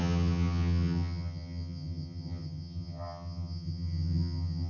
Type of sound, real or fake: fake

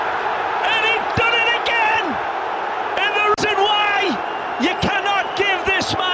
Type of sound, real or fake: real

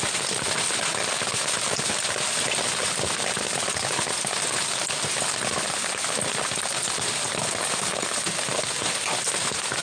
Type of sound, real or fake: real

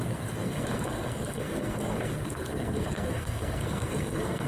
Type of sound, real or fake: fake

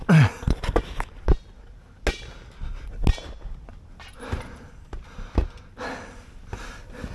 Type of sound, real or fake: real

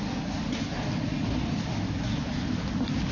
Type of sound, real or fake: real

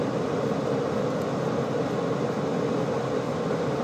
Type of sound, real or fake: real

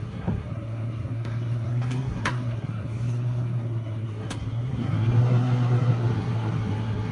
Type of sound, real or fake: fake